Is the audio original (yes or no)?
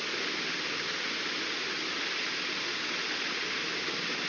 yes